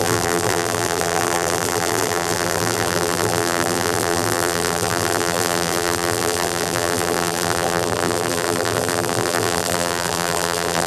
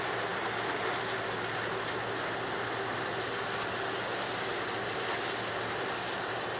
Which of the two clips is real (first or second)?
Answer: second